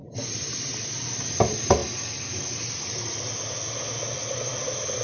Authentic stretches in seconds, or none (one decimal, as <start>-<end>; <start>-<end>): 1.4-5.0